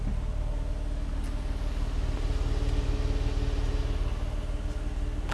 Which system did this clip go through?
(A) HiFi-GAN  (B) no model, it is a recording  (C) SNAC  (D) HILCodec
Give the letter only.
B